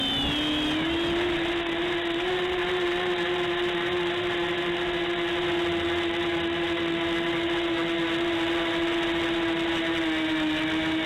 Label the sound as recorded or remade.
recorded